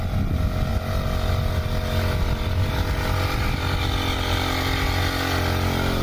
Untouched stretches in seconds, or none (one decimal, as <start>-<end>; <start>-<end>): 0.0-6.0